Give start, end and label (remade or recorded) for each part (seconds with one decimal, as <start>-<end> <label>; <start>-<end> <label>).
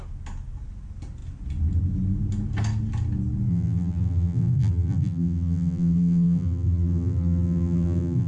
0.0-3.5 recorded; 3.5-8.3 remade